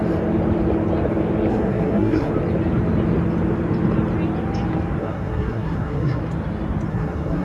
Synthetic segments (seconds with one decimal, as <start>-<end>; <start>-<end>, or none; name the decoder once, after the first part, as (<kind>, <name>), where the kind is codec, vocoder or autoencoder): 1.5-2.3 (codec, SNAC); 5.0-6.2; 6.9-7.4